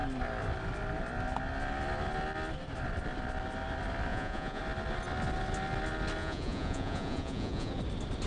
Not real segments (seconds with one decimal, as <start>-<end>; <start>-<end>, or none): 4.1-4.6; 6.2-7.7